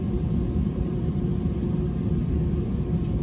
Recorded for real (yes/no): no